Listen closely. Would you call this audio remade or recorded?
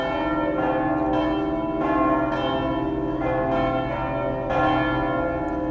recorded